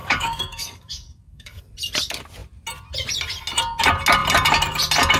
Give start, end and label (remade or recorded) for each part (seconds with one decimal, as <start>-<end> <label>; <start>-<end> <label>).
0.0-1.6 remade; 1.6-5.2 recorded